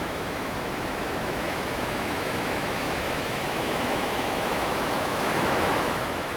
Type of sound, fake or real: fake